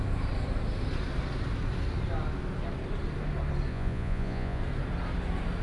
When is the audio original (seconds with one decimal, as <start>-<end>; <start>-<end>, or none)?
0.0-3.7; 4.6-5.6